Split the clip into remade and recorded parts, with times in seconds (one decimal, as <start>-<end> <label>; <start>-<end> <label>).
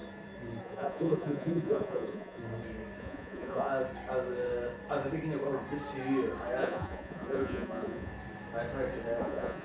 0.0-0.6 recorded; 0.6-2.4 remade; 2.4-3.0 recorded; 3.0-3.7 remade; 3.7-6.6 recorded; 6.6-8.1 remade; 8.1-9.2 recorded; 9.2-9.6 remade